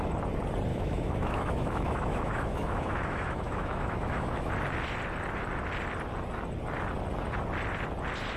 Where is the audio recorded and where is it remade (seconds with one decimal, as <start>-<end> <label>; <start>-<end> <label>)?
0.0-0.7 recorded; 0.7-4.5 remade; 4.5-8.4 recorded

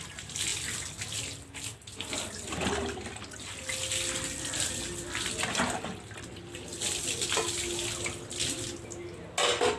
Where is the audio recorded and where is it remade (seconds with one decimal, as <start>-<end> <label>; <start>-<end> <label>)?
0.0-9.8 recorded

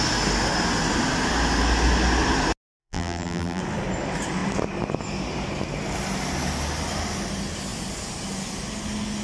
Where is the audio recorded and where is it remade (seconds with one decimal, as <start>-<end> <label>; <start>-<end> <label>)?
0.0-2.8 recorded; 2.8-3.6 remade; 3.6-9.2 recorded

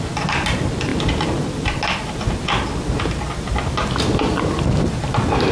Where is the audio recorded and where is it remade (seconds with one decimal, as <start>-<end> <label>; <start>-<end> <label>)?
0.0-5.5 recorded

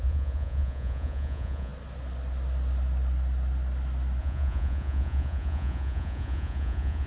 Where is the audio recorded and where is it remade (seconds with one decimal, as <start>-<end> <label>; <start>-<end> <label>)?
0.0-1.7 remade; 1.7-4.2 recorded; 4.2-7.1 remade